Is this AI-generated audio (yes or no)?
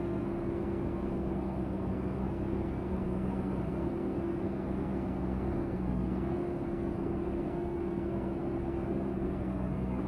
yes